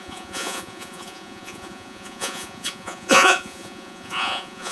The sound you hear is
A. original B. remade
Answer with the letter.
B